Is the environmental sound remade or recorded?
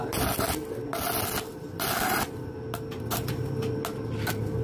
recorded